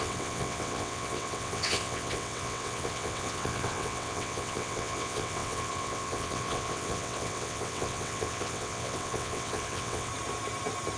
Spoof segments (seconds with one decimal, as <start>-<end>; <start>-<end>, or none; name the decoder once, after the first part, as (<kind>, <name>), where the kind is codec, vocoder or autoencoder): 0.0-10.1 (vocoder, WaveNeXt)